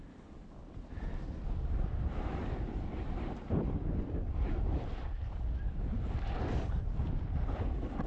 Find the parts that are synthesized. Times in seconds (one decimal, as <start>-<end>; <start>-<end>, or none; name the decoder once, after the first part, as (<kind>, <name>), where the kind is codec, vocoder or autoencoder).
0.0-4.9 (vocoder, BigVGAN v2)